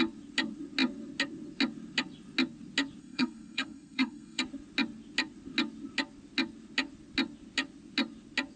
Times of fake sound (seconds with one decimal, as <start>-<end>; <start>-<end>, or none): 3.0-4.4